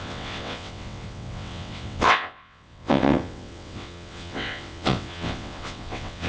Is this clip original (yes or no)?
no